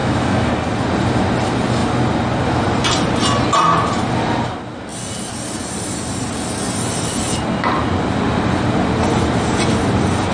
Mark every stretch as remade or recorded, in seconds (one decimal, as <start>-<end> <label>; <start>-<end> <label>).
0.0-0.5 remade; 0.5-10.3 recorded